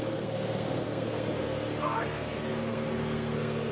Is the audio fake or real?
fake